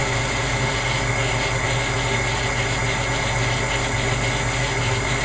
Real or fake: real